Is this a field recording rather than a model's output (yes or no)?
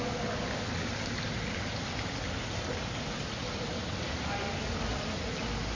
yes